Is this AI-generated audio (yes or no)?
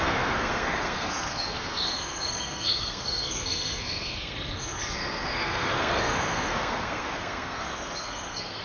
yes